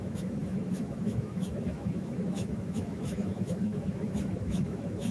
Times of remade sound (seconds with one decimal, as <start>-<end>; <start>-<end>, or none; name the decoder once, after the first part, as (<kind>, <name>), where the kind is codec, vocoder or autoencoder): 0.0-5.1 (autoencoder, DAC-VAE)